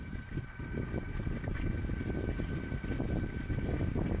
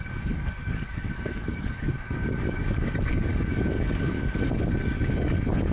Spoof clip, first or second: second